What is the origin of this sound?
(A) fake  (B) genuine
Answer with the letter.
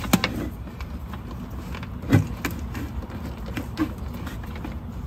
B